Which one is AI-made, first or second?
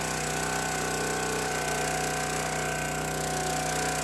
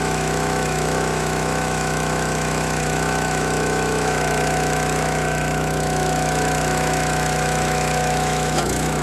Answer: second